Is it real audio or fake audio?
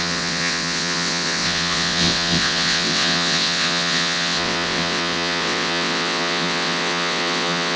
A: fake